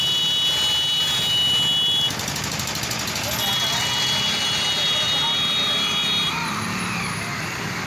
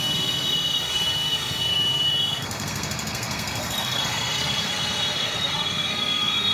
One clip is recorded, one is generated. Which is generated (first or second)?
second